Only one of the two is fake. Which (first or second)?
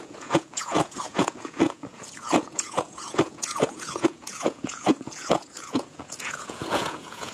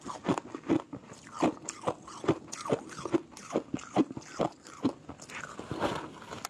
first